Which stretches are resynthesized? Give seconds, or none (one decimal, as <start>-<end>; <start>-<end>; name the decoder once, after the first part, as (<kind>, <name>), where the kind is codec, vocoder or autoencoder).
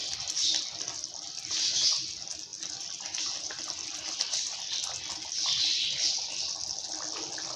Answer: 2.5-6.3 (vocoder, BigVGAN v2)